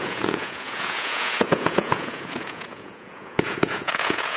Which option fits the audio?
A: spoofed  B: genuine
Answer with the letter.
A